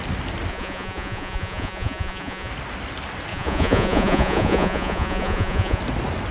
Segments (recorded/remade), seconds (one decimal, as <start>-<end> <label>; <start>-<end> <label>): 0.0-0.5 recorded; 0.5-2.5 remade; 2.5-3.3 recorded; 3.3-5.8 remade; 5.8-6.3 recorded